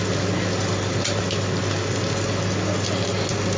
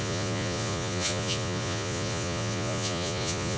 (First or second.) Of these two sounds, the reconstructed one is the second